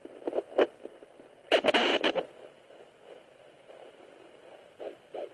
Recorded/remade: remade